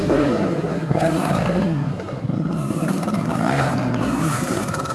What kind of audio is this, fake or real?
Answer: fake